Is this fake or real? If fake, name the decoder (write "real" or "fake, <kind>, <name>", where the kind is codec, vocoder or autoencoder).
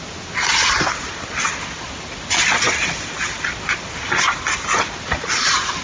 real